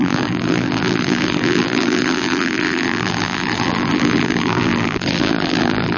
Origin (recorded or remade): remade